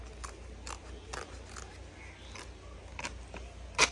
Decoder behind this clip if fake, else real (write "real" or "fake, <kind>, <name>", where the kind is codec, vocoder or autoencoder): real